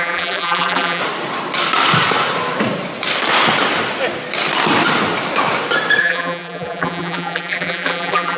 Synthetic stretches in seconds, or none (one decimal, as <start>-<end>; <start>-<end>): 0.0-1.0; 6.0-8.4